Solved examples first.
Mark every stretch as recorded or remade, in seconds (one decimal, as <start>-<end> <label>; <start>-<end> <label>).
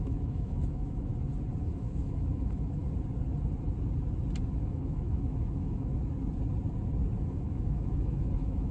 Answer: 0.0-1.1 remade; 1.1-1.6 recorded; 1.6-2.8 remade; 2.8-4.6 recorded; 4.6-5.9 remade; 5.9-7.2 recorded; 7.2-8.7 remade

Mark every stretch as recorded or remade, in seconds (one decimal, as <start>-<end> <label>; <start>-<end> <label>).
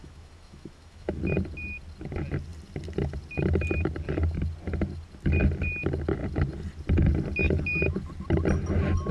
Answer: 0.0-1.2 remade; 1.2-9.1 recorded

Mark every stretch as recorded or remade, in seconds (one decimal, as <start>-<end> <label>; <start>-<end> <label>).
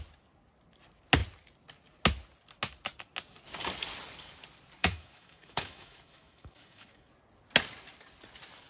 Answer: 0.0-4.8 recorded; 4.8-7.1 remade; 7.1-8.7 recorded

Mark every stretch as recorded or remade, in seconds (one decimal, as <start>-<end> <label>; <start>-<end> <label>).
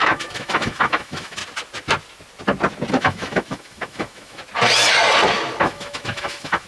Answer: 0.0-1.4 remade; 1.4-2.9 recorded; 2.9-4.4 remade; 4.4-5.6 recorded; 5.6-6.7 remade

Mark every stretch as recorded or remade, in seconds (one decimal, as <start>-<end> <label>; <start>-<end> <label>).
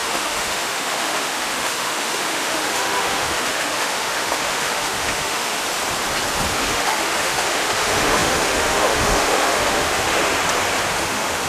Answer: 0.0-5.6 remade; 5.6-6.5 recorded; 6.5-10.3 remade; 10.3-10.9 recorded; 10.9-11.5 remade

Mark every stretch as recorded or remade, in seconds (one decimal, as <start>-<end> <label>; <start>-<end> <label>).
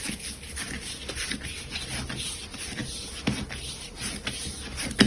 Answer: 0.0-5.1 recorded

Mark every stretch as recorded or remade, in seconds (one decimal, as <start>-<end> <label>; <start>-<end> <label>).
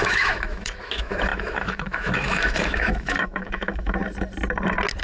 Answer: 0.0-4.0 remade; 4.0-5.0 recorded